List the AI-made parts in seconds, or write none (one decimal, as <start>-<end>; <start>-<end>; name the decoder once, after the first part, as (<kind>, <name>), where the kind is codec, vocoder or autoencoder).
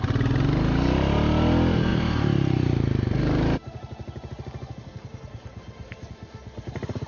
1.9-6.1 (vocoder, BigVGAN v2)